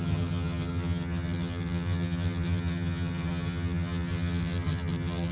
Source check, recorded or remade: remade